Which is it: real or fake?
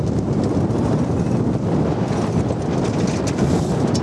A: real